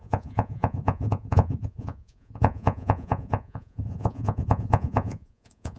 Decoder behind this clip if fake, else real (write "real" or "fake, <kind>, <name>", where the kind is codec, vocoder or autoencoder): fake, vocoder, Vocos